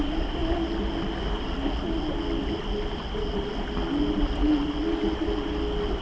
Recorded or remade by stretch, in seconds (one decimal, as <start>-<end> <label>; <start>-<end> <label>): 0.0-6.0 recorded